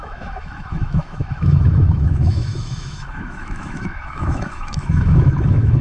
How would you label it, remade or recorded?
remade